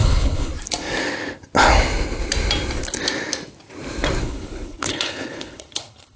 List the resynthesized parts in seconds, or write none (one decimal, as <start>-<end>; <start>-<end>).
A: 0.0-0.5; 4.2-6.2